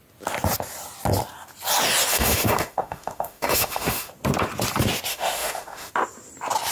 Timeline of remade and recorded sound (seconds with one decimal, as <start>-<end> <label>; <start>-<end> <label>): 0.0-2.1 recorded; 2.1-4.1 remade; 4.1-5.1 recorded; 5.1-5.9 remade; 5.9-6.7 recorded